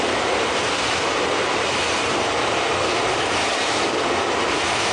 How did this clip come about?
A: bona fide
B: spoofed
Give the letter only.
A